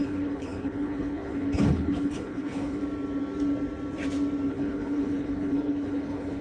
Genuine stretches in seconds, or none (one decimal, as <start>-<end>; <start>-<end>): 2.8-4.5